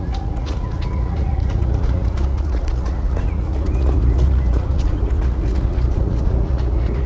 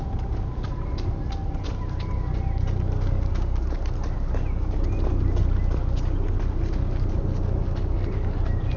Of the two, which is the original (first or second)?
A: second